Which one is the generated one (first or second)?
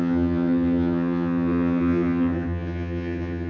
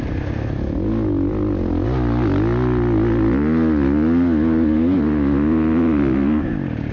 first